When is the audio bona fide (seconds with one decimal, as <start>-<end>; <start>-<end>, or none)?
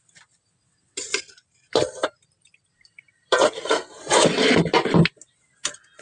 0.0-1.7; 4.6-6.0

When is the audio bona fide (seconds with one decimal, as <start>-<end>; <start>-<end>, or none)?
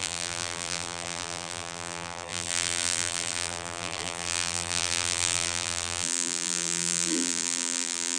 none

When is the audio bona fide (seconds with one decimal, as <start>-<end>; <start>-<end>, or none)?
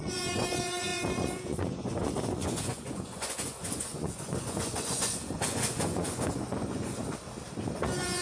7.0-7.7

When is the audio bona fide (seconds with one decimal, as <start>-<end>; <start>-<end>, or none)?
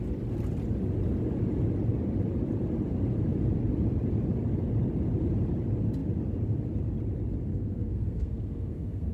0.0-7.5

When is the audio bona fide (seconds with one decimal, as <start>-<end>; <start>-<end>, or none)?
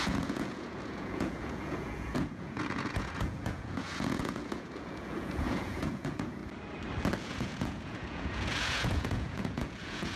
6.4-7.2